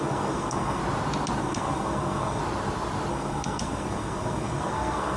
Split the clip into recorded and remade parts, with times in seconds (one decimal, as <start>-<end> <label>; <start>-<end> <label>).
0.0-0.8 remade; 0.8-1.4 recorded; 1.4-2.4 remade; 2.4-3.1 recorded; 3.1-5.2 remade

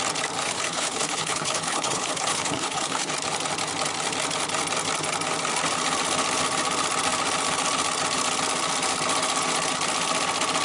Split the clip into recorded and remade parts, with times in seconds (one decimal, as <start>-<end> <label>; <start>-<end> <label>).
0.0-0.4 recorded; 0.4-3.1 remade; 3.1-10.6 recorded

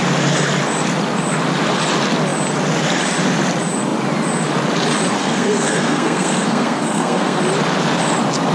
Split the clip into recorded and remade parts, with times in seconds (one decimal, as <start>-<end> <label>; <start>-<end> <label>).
0.0-5.2 recorded; 5.2-7.4 remade; 7.4-8.5 recorded

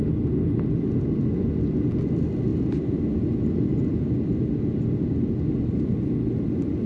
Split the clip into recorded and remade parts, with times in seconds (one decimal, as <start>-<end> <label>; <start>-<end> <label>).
0.0-6.9 recorded